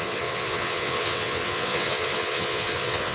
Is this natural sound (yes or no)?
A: no